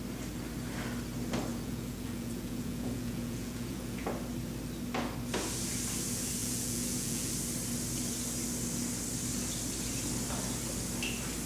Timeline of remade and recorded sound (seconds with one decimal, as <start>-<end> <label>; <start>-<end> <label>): 0.0-1.5 recorded; 1.5-4.1 remade; 4.1-6.4 recorded; 6.4-7.3 remade; 7.3-11.5 recorded

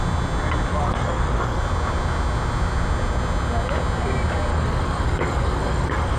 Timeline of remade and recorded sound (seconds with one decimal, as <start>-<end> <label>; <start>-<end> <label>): 0.0-0.7 recorded; 0.7-1.6 remade; 1.6-4.5 recorded; 4.5-6.2 remade